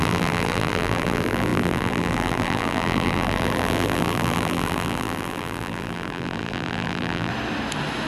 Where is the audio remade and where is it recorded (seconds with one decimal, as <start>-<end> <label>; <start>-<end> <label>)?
0.0-7.3 remade; 7.3-8.1 recorded